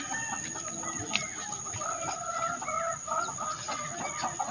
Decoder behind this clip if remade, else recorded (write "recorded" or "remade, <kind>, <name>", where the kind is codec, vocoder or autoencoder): recorded